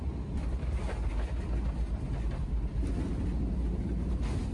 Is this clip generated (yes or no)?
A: no